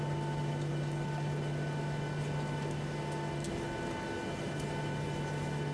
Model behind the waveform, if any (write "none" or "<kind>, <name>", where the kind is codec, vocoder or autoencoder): none